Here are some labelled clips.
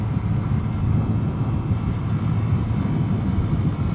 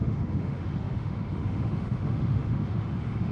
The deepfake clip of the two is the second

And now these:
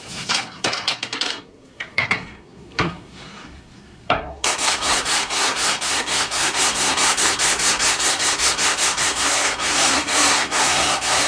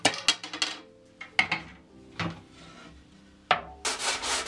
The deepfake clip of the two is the first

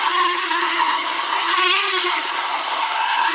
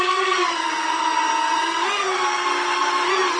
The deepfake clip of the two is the first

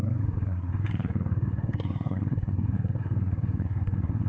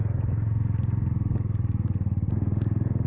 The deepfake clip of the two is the first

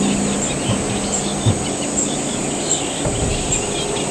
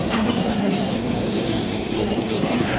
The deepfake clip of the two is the second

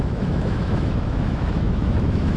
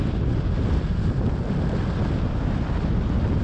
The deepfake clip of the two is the first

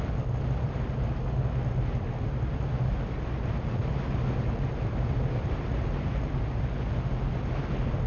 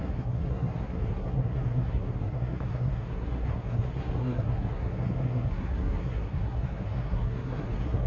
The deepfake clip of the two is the second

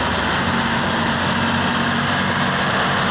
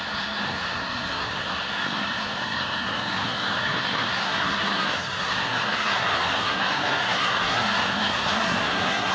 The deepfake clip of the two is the second